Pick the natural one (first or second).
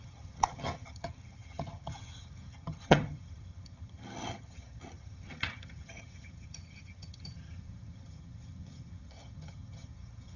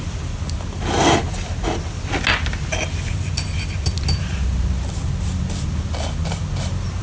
second